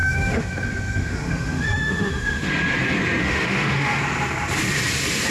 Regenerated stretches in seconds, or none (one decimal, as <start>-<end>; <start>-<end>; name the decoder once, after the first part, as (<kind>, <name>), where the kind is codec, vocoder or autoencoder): 0.0-2.5 (autoencoder, DAC-VAE); 3.2-4.0